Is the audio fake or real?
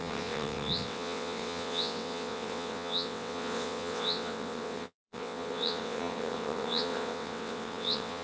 fake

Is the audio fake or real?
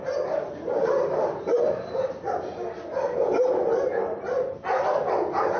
real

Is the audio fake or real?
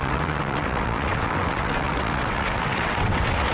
fake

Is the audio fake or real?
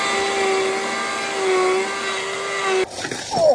real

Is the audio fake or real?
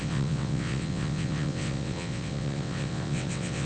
fake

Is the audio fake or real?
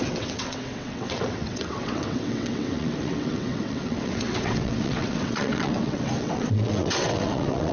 fake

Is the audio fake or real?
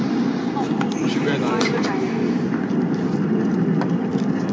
real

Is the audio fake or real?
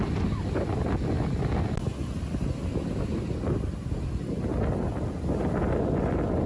real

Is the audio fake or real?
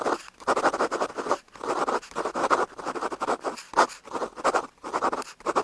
real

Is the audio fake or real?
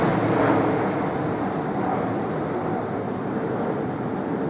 real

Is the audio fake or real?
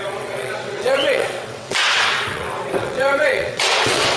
fake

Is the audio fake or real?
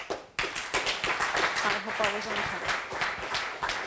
real